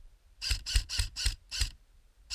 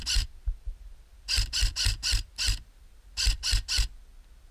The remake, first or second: first